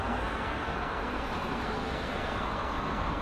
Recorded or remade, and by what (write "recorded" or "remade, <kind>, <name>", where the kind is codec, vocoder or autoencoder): remade, codec, SNAC